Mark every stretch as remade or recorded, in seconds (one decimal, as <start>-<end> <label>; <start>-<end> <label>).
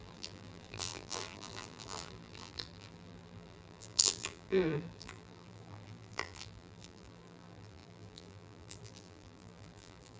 0.0-10.2 remade